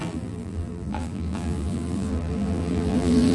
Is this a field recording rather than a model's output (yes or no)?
no